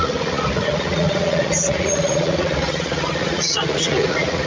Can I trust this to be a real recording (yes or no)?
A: no